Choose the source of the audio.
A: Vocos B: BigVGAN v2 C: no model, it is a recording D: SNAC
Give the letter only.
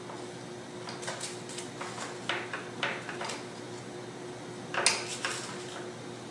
C